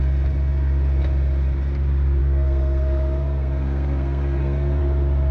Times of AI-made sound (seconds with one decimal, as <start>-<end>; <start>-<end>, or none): 2.2-4.8